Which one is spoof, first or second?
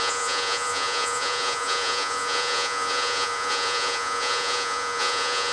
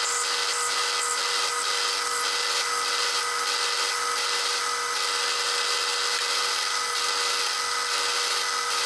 first